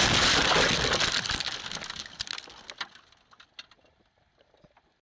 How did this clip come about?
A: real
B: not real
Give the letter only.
A